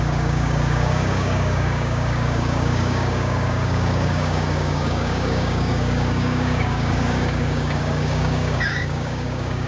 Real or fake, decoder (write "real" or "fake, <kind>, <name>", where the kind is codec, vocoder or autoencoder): fake, codec, DAC